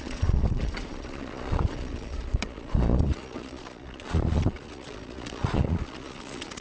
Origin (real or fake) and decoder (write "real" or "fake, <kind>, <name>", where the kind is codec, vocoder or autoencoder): fake, vocoder, Vocos